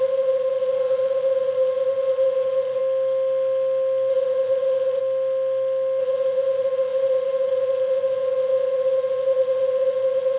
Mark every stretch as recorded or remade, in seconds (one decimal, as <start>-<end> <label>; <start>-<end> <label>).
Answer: 0.0-2.8 remade; 2.8-4.1 recorded; 4.1-5.0 remade; 5.0-6.0 recorded; 6.0-10.4 remade